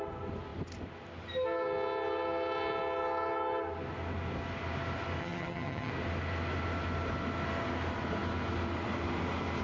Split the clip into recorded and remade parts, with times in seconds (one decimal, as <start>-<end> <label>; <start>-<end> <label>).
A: 0.0-5.2 recorded; 5.2-5.9 remade; 5.9-9.6 recorded